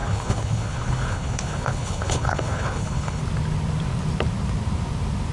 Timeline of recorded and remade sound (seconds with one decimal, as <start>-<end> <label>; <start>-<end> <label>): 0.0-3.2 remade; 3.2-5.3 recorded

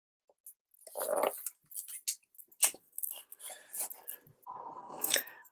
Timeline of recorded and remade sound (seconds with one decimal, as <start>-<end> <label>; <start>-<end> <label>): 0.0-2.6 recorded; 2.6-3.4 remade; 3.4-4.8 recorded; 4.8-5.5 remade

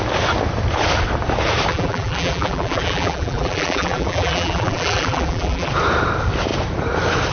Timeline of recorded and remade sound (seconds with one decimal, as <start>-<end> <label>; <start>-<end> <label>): 0.0-1.7 recorded; 1.7-5.7 remade; 5.7-7.3 recorded